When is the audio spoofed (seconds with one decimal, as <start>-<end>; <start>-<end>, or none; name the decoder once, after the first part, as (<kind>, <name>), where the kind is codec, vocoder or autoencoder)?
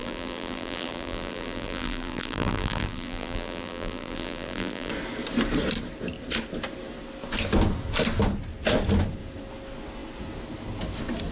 0.0-4.9 (vocoder, BigVGAN v2)